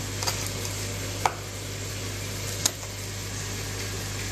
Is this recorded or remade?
recorded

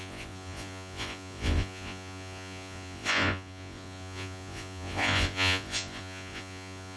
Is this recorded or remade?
remade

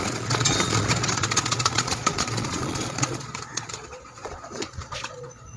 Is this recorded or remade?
remade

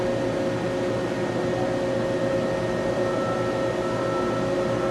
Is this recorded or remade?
recorded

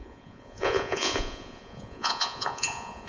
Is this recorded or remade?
remade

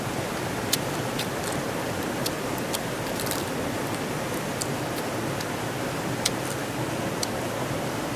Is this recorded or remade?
recorded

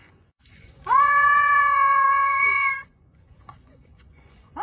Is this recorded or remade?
remade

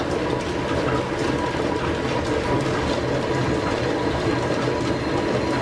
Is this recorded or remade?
recorded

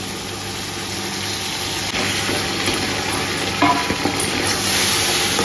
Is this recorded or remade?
recorded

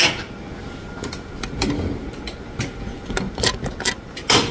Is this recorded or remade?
recorded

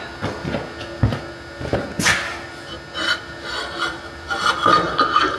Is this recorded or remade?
recorded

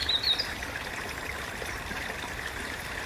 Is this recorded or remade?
recorded